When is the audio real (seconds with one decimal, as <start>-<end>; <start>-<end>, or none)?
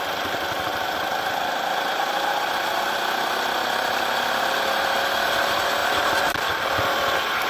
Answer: 0.0-7.5